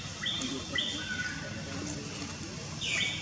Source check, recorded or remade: recorded